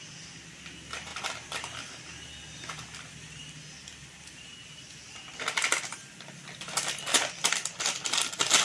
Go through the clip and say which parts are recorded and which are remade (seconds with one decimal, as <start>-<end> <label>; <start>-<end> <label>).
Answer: 0.0-1.1 recorded; 1.1-2.4 remade; 2.4-4.0 recorded; 4.0-7.1 remade; 7.1-8.6 recorded